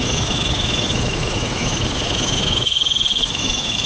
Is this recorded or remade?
remade